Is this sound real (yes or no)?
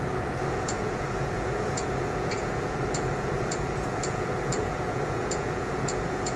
no